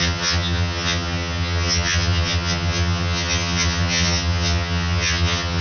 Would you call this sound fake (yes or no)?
yes